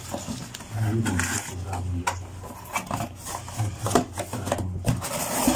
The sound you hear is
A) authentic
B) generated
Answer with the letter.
A